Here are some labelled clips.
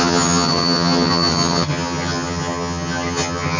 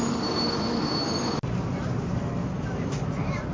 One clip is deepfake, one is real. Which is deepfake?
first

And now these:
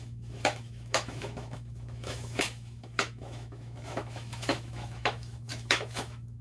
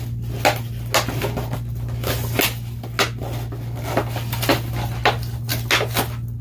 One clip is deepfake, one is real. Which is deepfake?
first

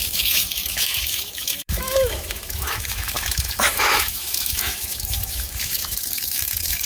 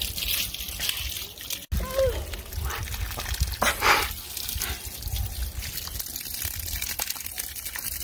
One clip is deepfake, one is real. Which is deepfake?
first